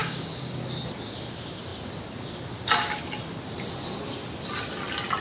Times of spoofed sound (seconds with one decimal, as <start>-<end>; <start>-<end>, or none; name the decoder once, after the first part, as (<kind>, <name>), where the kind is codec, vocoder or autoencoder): 0.0-0.6 (codec, DAC)